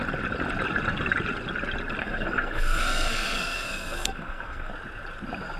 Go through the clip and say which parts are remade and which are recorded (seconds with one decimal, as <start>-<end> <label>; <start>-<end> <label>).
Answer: 0.0-2.0 recorded; 2.0-4.7 remade; 4.7-5.6 recorded